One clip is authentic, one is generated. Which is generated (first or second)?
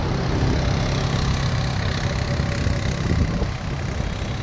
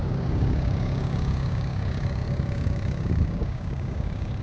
second